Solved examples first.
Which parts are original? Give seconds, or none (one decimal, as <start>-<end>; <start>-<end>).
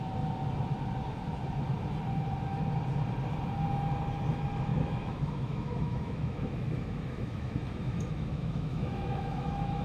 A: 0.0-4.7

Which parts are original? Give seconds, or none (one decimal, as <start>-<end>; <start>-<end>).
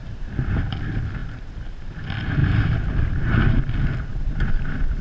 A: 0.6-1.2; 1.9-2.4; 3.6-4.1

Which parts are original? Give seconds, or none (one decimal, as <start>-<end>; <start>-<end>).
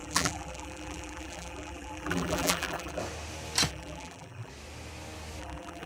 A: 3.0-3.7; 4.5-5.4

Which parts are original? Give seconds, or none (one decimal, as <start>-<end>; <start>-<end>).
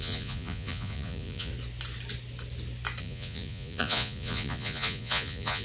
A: 1.5-3.0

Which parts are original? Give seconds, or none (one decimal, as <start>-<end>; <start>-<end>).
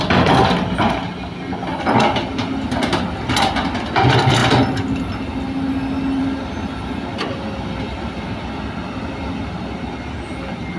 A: 0.0-10.8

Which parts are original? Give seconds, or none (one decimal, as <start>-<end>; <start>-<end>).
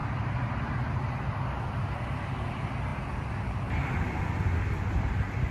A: 0.0-5.5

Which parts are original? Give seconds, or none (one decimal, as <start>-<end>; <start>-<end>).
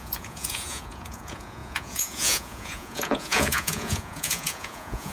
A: none